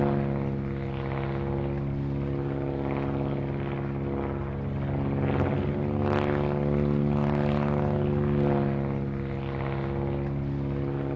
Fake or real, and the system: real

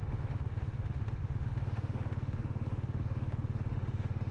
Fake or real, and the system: fake, autoencoder, DAC-VAE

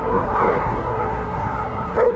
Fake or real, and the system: fake, codec, SNAC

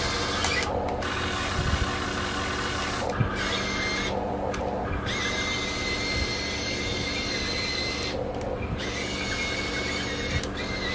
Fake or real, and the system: real